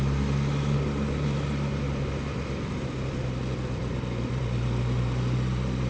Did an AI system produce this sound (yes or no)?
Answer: no